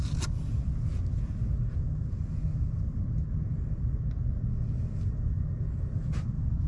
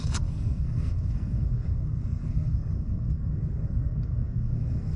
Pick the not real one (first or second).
second